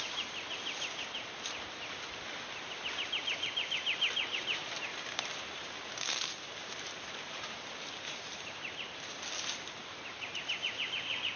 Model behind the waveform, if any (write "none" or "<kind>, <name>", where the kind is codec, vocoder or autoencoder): none